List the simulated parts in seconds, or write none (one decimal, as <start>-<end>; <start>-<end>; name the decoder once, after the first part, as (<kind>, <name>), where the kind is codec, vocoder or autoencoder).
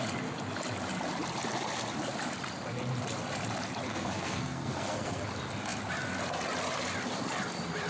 3.9-5.2 (codec, SNAC)